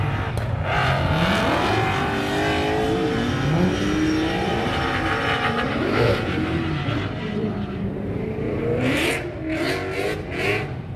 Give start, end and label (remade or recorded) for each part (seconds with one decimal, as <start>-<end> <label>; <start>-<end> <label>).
0.0-4.5 recorded; 4.5-9.1 remade; 9.1-11.0 recorded